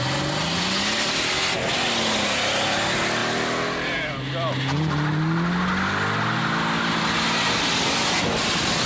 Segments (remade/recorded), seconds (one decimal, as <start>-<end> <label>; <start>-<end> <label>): 0.0-8.9 recorded